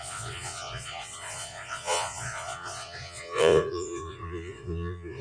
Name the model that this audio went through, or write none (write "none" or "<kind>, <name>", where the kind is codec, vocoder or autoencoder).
vocoder, Vocos